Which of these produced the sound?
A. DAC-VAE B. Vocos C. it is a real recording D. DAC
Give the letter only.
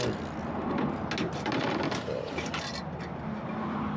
C